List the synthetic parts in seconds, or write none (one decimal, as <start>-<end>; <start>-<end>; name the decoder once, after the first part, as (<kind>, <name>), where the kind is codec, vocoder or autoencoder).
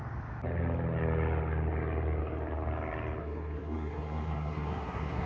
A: 3.2-5.3 (codec, SNAC)